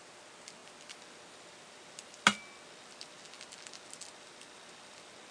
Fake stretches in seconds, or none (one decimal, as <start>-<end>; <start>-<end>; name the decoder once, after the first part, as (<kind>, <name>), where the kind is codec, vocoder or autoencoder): none